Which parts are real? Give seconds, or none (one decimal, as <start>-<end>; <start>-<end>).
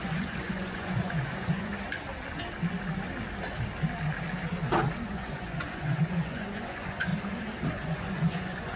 1.7-5.1; 7.1-7.7